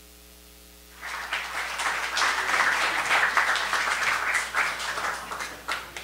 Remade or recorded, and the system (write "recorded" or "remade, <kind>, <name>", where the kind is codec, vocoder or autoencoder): recorded